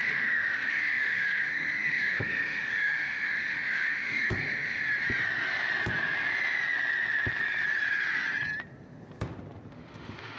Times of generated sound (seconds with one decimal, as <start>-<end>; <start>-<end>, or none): 0.0-4.8; 9.7-10.4